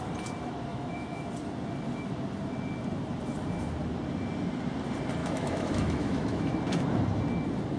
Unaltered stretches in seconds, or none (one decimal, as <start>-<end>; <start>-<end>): 0.0-0.7; 1.2-5.2; 6.6-7.8